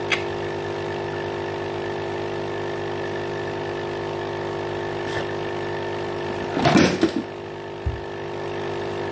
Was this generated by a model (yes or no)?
no